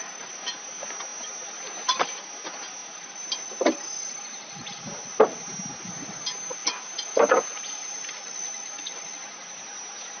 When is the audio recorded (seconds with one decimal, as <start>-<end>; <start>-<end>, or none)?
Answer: 0.0-10.2